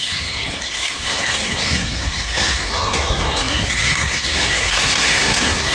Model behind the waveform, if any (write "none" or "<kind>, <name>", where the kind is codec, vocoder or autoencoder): codec, SNAC